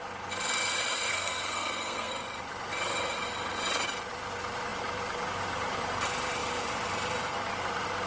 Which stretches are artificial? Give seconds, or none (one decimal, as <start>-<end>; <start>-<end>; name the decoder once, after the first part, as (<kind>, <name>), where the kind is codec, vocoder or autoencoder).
1.1-2.1 (codec, SNAC)